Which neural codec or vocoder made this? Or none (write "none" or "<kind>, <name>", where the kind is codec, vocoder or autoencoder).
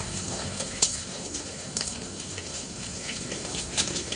codec, SNAC